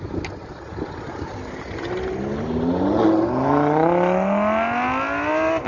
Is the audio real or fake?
real